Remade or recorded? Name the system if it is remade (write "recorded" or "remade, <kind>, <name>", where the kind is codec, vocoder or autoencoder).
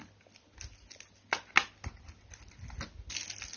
recorded